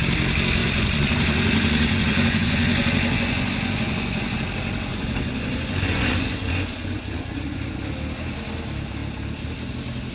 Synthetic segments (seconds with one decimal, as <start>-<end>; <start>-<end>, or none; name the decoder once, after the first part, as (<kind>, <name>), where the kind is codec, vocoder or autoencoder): 0.6-4.4 (vocoder, Vocos); 4.9-7.7